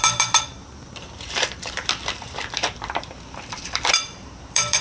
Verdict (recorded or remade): remade